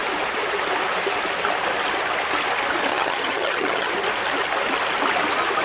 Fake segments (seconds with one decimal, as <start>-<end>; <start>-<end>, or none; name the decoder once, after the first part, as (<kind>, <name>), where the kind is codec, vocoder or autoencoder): 2.9-3.9 (vocoder, HiFi-GAN)